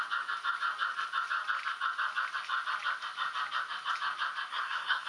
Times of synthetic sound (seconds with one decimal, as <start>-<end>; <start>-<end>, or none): 4.5-5.1